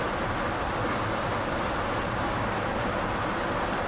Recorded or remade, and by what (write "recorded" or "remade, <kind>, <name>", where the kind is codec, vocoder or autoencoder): recorded